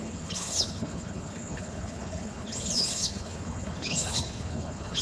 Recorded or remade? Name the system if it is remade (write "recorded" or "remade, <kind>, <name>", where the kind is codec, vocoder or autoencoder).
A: remade, codec, HILCodec